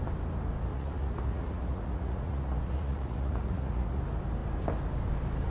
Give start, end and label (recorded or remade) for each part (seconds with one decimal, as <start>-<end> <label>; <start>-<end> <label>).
0.0-0.7 recorded; 0.7-4.0 remade; 4.0-5.5 recorded